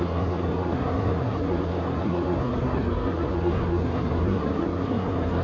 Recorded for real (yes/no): no